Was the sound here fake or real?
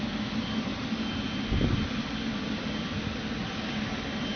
real